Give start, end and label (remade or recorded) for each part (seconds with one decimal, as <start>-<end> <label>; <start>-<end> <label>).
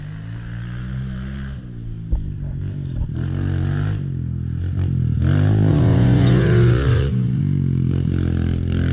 0.0-5.7 recorded; 5.7-7.4 remade; 7.4-8.9 recorded